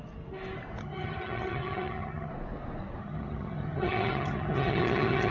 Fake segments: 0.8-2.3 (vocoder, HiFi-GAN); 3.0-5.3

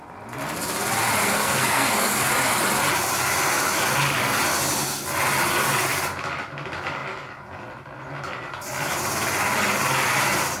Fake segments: 1.2-2.3 (codec, SNAC)

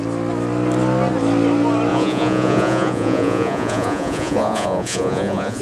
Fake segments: 1.9-5.6 (vocoder, Vocos)

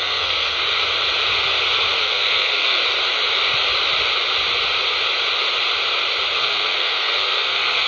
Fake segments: 0.0-0.6 (codec, SNAC); 2.0-2.8; 6.4-7.9

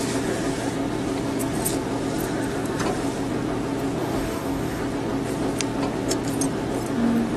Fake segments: 4.0-4.8 (codec, DAC)

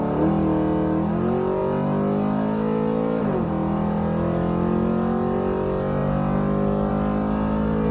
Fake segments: none